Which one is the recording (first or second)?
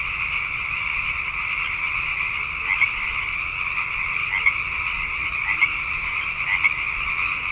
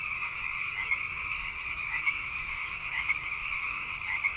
first